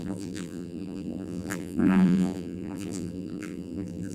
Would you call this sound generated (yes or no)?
yes